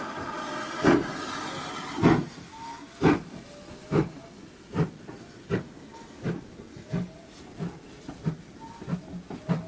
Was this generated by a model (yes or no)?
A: no